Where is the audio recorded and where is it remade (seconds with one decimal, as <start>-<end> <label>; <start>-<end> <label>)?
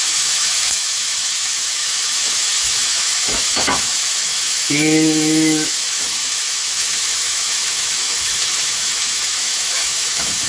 0.0-10.5 remade